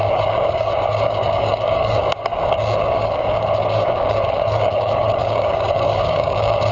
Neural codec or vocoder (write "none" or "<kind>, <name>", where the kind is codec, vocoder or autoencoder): codec, DAC